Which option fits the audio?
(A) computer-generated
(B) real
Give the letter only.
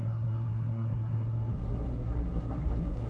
A